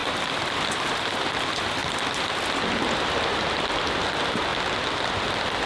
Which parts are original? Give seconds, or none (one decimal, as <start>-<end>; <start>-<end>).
0.0-1.8; 2.6-4.5